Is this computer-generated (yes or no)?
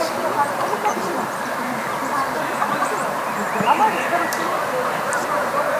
yes